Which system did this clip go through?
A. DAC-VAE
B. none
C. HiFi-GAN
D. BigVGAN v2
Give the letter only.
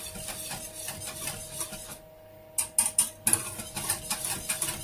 B